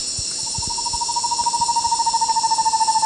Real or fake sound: real